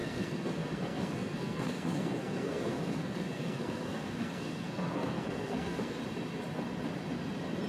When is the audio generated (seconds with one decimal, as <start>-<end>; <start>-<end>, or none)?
0.0-6.0